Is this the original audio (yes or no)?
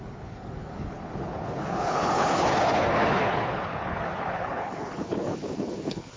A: no